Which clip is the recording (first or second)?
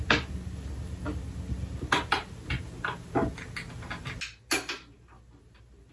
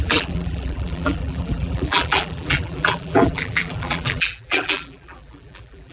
first